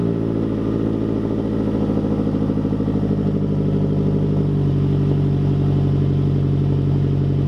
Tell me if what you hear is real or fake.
real